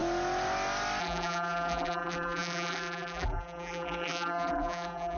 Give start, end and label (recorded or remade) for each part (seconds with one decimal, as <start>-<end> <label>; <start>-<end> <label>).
0.0-1.0 recorded; 1.0-5.2 remade